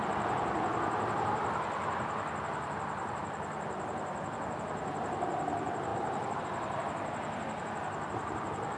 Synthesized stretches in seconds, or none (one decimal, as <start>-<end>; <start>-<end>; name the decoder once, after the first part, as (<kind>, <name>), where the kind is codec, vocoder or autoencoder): none